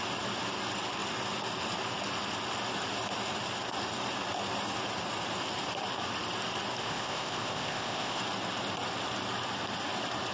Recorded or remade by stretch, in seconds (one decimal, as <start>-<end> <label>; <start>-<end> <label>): 0.0-6.8 recorded; 6.8-8.2 remade; 8.2-10.3 recorded